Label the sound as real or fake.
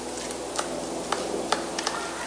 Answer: real